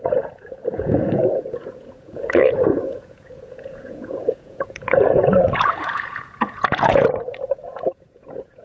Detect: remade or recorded remade